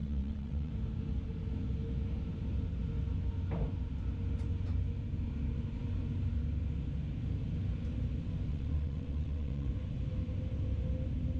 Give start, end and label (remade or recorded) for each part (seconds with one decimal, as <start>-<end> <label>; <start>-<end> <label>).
0.0-0.7 remade; 0.7-8.5 recorded; 8.5-9.7 remade; 9.7-11.4 recorded